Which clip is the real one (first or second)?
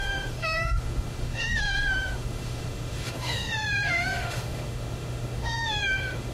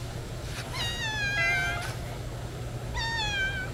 second